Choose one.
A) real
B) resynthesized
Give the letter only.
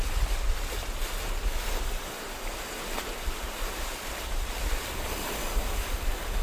A